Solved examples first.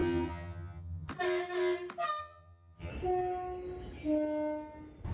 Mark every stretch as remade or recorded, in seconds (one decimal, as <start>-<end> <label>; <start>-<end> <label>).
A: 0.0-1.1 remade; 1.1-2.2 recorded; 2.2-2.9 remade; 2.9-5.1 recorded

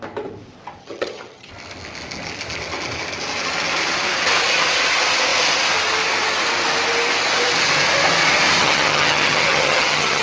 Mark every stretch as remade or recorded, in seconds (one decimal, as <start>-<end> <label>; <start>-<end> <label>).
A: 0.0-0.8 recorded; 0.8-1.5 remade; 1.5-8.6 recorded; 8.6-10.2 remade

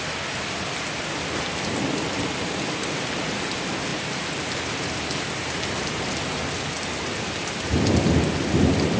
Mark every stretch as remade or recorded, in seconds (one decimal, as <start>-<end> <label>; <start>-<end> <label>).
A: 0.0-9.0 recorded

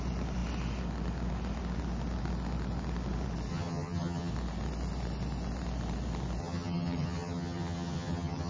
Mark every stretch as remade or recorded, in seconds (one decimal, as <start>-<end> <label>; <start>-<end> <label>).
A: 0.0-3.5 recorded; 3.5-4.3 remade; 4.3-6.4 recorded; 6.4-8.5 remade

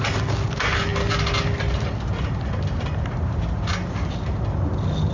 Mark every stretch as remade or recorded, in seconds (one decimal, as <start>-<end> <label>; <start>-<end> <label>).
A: 0.0-5.1 recorded

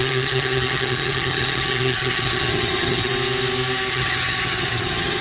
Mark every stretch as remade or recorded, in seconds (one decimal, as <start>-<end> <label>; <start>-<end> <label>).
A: 0.0-3.1 remade; 3.1-3.9 recorded; 3.9-5.2 remade